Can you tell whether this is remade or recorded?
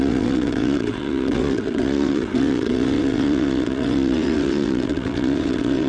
remade